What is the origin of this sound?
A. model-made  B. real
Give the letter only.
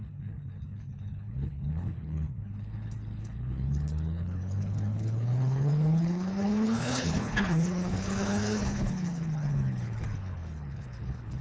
A